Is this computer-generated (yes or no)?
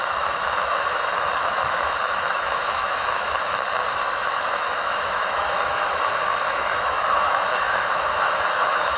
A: yes